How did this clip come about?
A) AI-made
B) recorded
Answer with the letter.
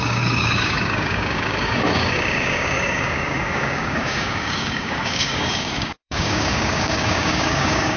A